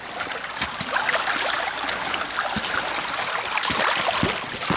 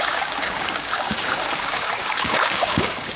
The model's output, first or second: second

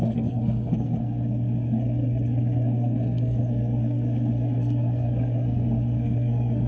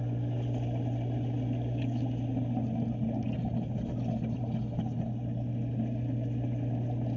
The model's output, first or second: first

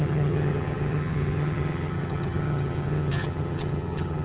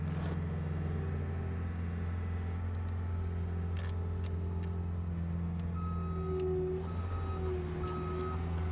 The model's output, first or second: first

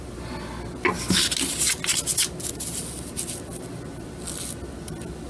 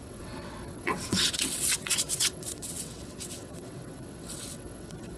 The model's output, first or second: second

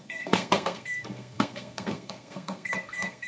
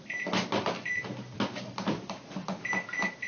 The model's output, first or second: first